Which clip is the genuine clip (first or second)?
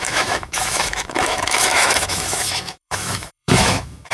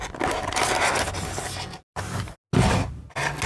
second